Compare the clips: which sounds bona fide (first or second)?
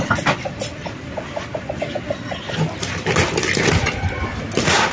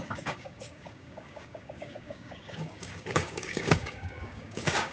first